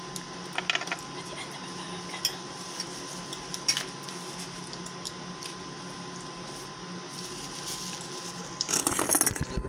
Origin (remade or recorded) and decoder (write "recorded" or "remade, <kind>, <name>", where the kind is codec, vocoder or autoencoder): recorded